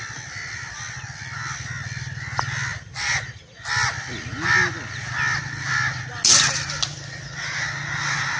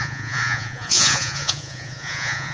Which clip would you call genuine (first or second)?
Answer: first